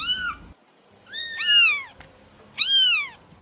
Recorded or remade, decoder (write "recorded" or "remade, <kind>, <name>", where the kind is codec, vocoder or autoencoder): recorded